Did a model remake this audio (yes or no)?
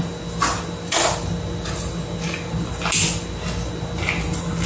no